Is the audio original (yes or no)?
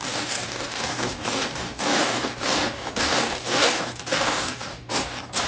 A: no